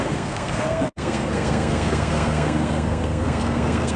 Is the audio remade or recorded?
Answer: remade